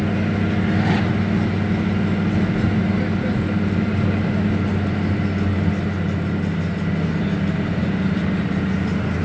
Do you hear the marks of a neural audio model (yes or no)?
no